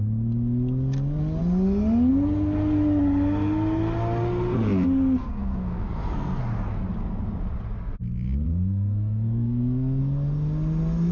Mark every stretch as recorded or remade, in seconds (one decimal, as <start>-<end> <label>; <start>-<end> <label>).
0.0-5.2 recorded; 5.2-6.4 remade; 6.4-8.5 recorded; 8.5-10.0 remade; 10.0-11.1 recorded